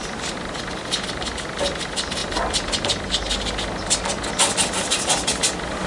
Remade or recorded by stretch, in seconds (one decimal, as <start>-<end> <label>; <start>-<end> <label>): 0.0-5.9 recorded